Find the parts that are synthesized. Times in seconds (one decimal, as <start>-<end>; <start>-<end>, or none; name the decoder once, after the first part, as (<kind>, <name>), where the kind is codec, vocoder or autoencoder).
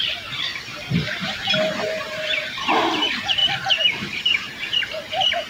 0.0-0.5 (vocoder, BigVGAN v2); 1.6-5.5